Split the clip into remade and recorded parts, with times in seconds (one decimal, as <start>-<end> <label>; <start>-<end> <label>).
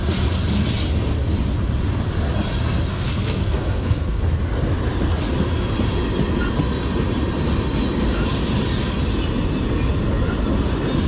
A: 0.0-2.9 recorded; 2.9-4.2 remade; 4.2-11.1 recorded